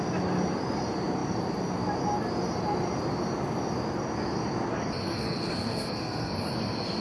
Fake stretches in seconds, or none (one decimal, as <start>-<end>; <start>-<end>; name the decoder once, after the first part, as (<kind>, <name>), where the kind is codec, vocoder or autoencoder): 5.0-6.3 (codec, SNAC)

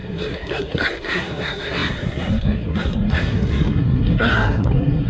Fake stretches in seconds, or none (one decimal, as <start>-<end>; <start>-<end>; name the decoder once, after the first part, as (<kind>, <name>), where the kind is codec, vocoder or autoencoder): 0.0-5.1 (codec, SNAC)

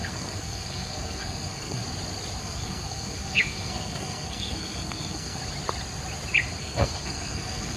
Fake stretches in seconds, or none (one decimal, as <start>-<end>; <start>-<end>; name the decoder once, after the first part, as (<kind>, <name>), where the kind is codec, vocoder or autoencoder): 0.0-1.8 (codec, SNAC); 2.4-5.4; 6.6-7.8

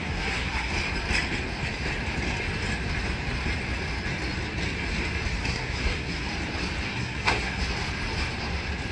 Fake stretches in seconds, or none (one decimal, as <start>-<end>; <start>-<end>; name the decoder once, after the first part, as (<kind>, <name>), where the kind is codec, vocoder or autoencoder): 0.0-0.7 (codec, SNAC); 5.4-6.3; 6.9-7.6

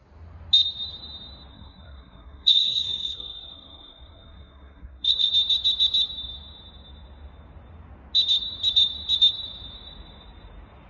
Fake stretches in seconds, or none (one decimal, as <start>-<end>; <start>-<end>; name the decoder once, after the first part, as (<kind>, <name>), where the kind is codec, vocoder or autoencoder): 1.5-5.3 (codec, SNAC)

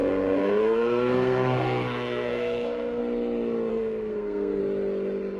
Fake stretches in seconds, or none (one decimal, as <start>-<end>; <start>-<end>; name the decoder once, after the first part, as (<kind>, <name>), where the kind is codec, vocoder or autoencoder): 0.0-3.0 (codec, SNAC); 3.7-4.6